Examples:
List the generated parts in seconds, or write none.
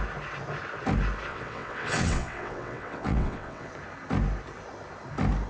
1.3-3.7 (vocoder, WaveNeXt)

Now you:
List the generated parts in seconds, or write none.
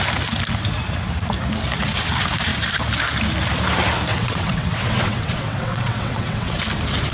4.1-6.6 (vocoder, WaveNeXt)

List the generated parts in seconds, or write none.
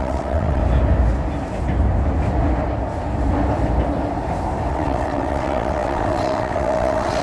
0.0-0.6 (vocoder, WaveNeXt); 4.7-7.2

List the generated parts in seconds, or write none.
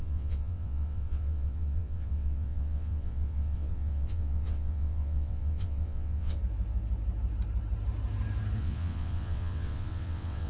0.0-6.4 (vocoder, WaveNeXt); 8.6-10.5